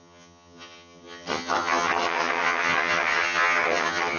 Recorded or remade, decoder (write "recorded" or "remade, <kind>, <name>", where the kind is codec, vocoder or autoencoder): remade, vocoder, HiFi-GAN